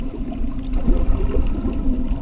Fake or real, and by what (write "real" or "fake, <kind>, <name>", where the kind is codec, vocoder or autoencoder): real